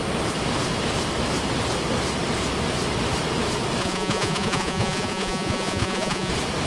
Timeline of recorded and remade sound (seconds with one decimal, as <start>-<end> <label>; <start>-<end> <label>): 0.0-3.8 recorded; 3.8-6.3 remade; 6.3-6.7 recorded